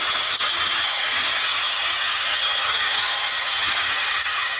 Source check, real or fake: fake